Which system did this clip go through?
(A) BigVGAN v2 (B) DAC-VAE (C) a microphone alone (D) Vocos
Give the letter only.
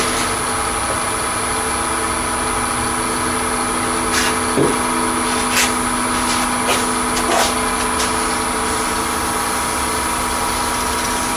C